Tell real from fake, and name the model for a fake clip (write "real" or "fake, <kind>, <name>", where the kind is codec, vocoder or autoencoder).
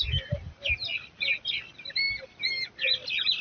fake, vocoder, BigVGAN v2